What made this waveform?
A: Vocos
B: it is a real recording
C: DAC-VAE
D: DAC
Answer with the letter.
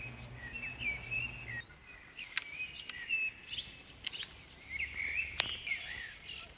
B